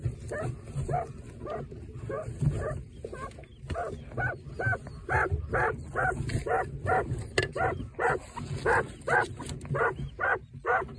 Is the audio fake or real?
real